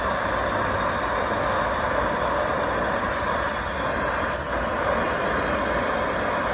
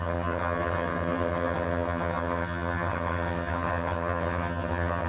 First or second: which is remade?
second